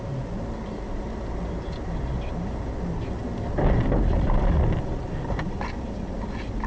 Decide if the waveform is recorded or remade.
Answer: recorded